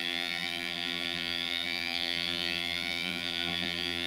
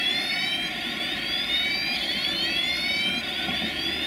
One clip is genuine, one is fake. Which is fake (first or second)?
first